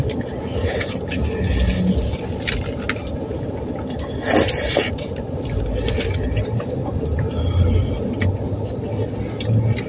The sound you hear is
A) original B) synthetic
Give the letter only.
A